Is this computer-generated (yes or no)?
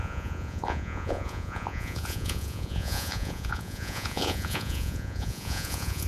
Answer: yes